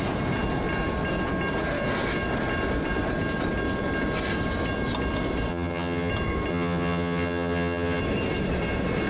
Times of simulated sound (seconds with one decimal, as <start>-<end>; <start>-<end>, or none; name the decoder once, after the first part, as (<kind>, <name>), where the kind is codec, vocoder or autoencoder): 5.5-6.1 (vocoder, HiFi-GAN); 6.5-8.0